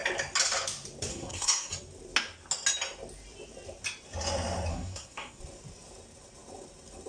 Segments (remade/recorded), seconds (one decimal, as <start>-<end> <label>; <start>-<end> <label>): 0.0-1.1 recorded; 1.1-1.7 remade; 1.7-4.7 recorded; 4.7-5.4 remade; 5.4-7.1 recorded